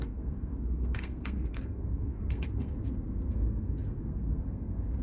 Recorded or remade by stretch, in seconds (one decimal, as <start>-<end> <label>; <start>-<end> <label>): 0.0-5.0 remade